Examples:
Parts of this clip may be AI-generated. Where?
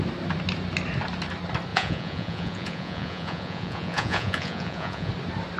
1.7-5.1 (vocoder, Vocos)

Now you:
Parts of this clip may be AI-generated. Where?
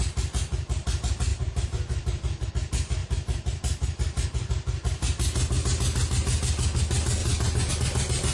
1.3-2.5 (vocoder, BigVGAN v2); 3.0-4.5; 7.2-7.7